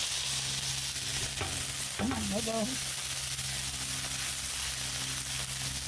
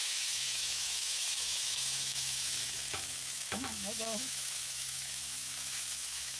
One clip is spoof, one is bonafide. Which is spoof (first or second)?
second